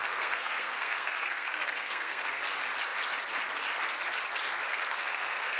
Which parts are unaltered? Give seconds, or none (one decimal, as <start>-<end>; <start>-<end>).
2.4-4.7